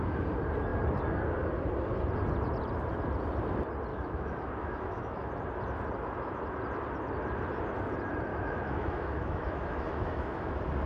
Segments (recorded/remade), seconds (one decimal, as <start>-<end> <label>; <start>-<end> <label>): 0.0-3.9 recorded; 3.9-5.3 remade; 5.3-8.3 recorded; 8.3-10.5 remade; 10.5-10.9 recorded